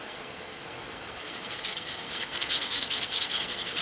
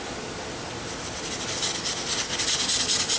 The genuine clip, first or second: second